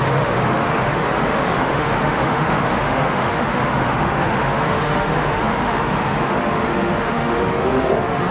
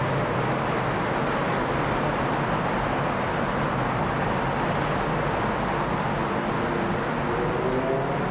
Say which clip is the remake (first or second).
first